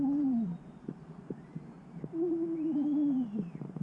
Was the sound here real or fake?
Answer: fake